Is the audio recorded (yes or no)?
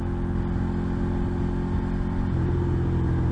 yes